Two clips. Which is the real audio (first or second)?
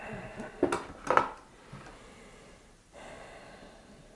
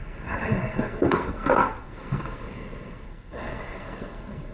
first